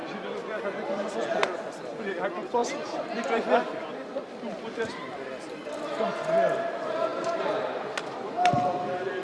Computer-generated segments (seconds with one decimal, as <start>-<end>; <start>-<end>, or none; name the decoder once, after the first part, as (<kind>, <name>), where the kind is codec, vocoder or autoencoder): 7.1-8.5 (vocoder, BigVGAN v2)